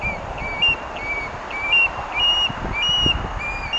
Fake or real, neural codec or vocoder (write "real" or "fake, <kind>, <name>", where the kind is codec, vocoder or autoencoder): real